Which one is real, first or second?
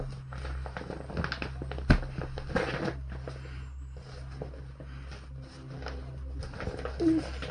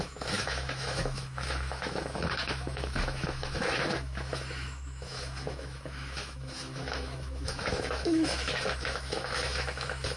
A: first